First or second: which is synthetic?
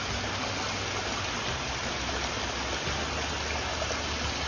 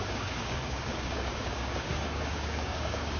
second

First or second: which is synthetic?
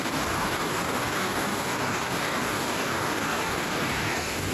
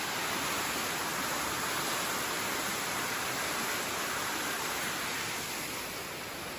first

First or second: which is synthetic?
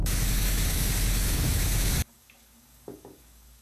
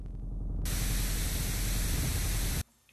first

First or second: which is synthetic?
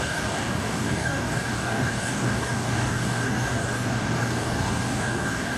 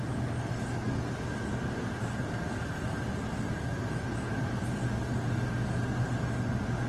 first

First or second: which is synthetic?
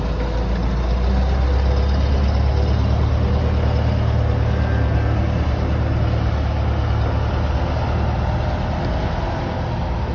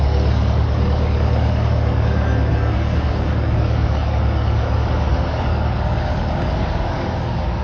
second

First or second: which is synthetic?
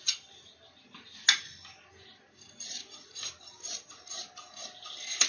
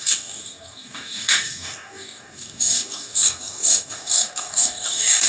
second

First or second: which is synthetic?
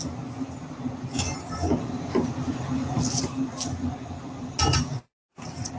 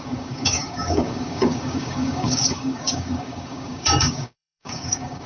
second